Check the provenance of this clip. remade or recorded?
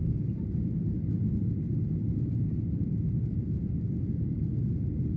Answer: recorded